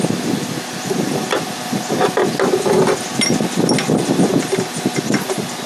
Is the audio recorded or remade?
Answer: recorded